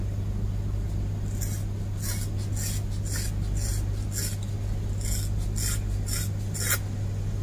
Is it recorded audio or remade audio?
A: recorded